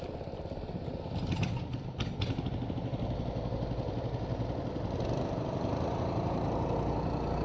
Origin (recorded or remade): recorded